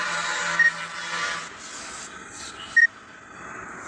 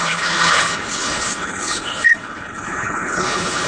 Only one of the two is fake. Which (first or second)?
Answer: second